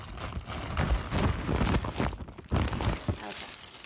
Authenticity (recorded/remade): recorded